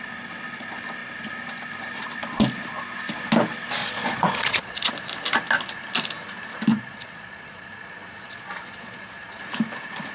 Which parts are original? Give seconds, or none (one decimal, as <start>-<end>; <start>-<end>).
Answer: 0.0-3.8; 4.9-6.7; 9.4-10.1